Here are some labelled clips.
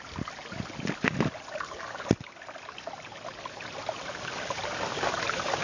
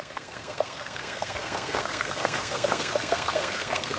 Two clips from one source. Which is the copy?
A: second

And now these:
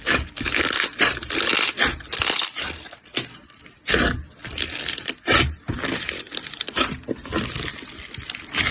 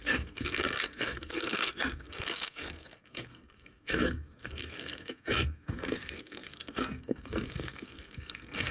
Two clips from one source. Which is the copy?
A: second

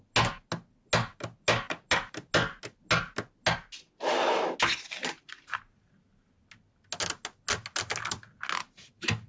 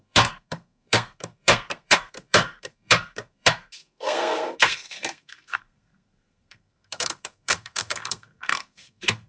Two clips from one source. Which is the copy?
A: second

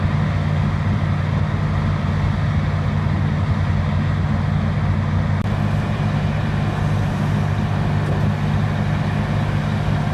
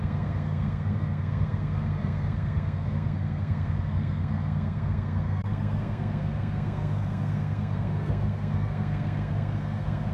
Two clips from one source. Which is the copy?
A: second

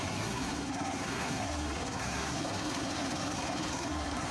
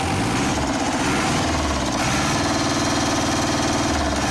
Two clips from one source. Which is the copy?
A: first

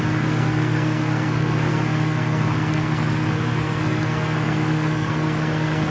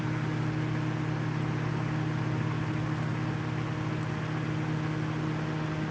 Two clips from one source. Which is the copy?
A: first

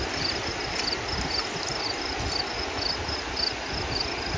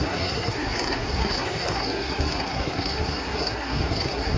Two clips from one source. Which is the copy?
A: second